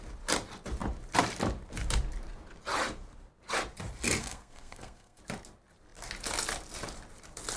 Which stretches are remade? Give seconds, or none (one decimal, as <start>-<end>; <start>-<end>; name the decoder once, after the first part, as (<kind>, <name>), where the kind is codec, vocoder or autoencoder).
4.2-5.2 (codec, SNAC)